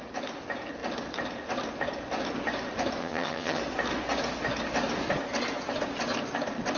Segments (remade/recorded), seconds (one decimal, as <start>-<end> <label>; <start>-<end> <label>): 0.0-3.0 recorded; 3.0-3.6 remade; 3.6-6.8 recorded